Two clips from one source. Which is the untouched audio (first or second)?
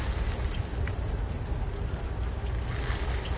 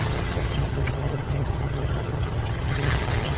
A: first